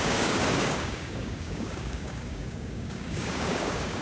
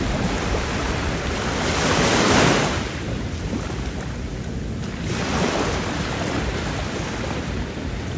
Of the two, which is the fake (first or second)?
first